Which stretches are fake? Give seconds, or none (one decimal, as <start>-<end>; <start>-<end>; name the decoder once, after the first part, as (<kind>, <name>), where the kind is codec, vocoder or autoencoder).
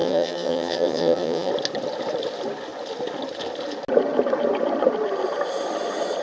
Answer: 0.0-1.5 (vocoder, HiFi-GAN)